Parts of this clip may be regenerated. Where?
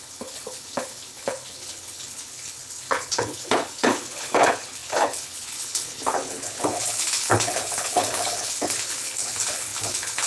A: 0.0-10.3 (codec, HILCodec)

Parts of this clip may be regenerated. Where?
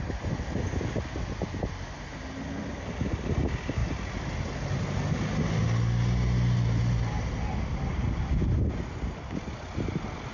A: none